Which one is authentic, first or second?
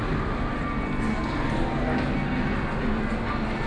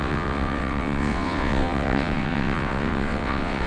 first